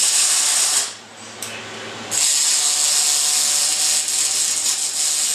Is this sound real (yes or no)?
yes